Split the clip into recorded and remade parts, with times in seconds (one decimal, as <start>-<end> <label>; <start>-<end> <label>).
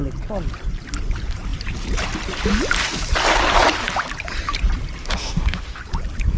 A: 0.0-5.0 recorded; 5.0-5.8 remade; 5.8-6.4 recorded